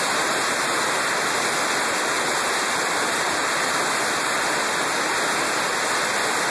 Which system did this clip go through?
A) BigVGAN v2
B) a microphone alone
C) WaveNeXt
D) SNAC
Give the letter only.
B